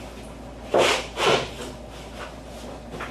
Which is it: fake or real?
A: real